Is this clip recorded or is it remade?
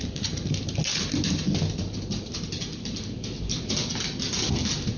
recorded